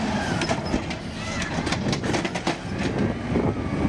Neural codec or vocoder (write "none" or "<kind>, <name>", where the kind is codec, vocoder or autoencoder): none